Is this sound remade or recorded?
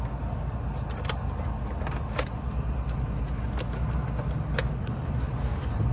recorded